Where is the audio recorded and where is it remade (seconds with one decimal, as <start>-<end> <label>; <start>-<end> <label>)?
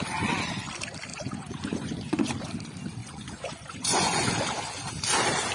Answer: 0.0-1.1 recorded; 1.1-2.3 remade; 2.3-3.0 recorded; 3.0-4.3 remade; 4.3-5.5 recorded